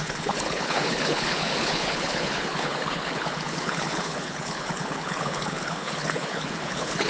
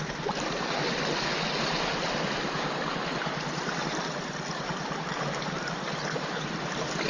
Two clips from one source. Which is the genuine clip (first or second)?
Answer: second